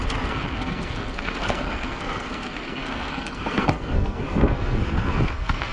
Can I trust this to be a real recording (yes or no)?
no